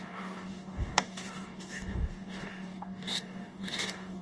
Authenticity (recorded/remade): remade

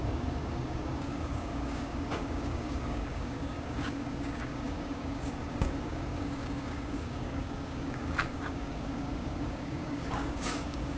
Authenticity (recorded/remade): remade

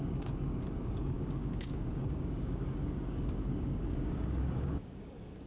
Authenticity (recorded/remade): remade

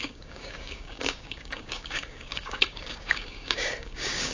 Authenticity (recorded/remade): remade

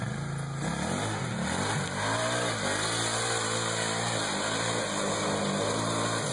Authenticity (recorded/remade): recorded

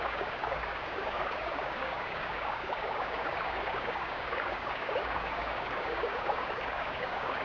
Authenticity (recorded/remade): remade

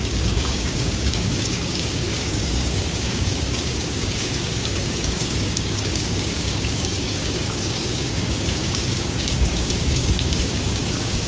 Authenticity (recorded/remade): remade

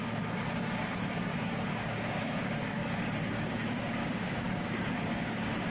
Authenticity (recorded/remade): remade